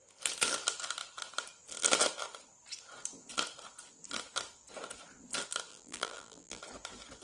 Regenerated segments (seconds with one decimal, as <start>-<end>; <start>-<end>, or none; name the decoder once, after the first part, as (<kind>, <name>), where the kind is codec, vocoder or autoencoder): 5.7-6.6 (vocoder, BigVGAN v2)